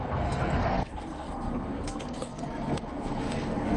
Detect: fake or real fake